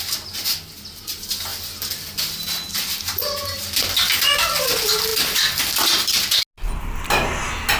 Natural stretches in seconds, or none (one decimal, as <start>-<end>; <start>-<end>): 0.0-7.8